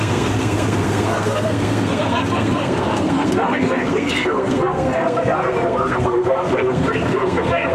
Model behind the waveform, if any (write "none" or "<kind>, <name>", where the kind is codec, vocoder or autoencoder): codec, SNAC